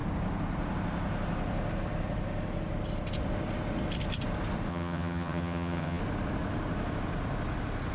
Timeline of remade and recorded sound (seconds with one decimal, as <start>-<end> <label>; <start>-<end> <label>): 0.0-4.7 recorded; 4.7-6.0 remade; 6.0-7.9 recorded